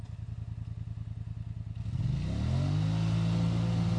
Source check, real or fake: real